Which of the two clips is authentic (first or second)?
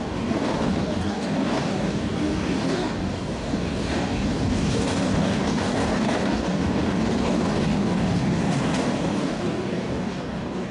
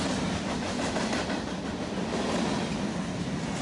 second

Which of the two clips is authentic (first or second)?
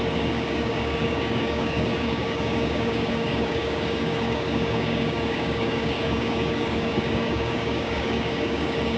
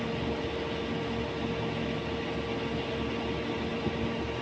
second